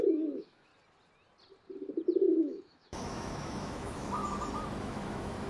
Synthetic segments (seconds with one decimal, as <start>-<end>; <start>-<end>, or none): 0.0-0.7; 2.2-4.2; 4.8-5.5